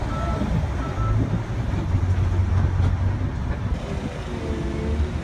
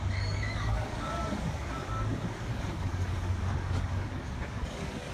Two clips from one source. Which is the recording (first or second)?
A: first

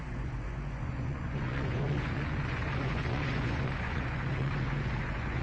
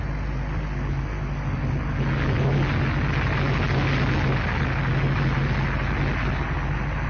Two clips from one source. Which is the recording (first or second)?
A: second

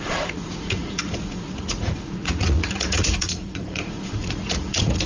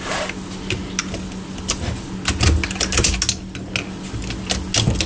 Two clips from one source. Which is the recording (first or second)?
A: second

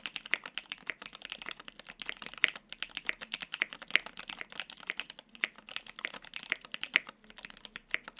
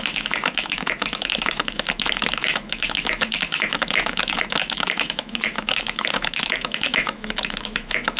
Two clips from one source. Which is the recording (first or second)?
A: first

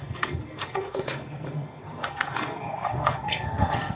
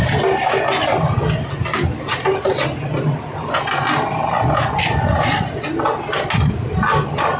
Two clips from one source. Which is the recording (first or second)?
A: second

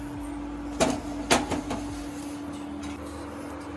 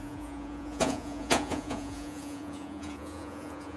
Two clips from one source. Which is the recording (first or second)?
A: first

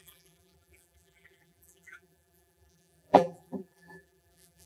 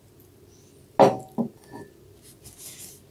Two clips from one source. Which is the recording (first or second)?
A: second